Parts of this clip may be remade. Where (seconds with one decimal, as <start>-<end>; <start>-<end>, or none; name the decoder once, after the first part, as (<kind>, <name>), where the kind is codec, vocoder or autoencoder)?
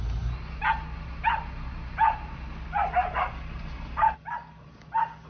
none